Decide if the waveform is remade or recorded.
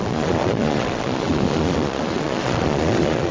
remade